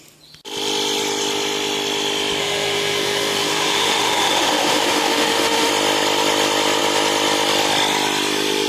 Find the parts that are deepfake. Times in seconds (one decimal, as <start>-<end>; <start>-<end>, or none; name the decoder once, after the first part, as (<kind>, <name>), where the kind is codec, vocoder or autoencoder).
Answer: 2.4-5.7 (autoencoder, DAC-VAE)